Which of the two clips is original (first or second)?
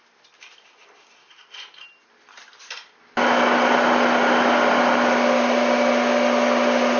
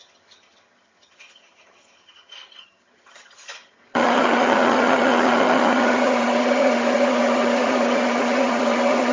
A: first